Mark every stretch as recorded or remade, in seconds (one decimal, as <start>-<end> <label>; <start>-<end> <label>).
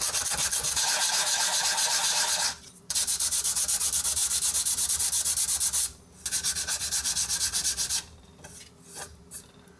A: 0.0-9.8 recorded